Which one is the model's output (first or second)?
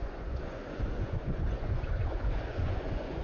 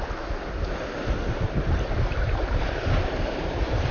first